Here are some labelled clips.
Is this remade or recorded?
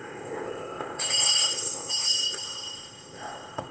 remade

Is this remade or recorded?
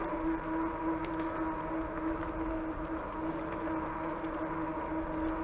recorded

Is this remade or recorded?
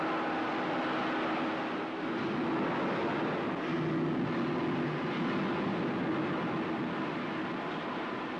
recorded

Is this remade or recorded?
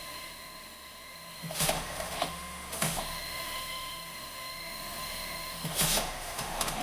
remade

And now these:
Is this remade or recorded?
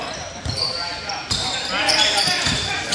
recorded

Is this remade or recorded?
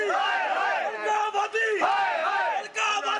recorded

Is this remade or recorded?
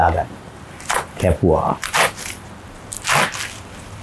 recorded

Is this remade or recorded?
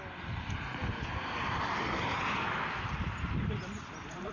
recorded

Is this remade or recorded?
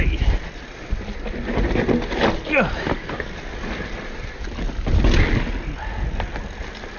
recorded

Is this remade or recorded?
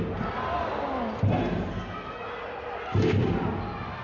recorded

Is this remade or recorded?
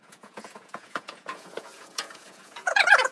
remade